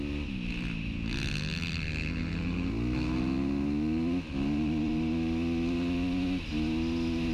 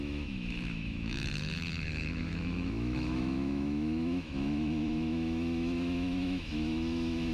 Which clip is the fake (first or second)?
second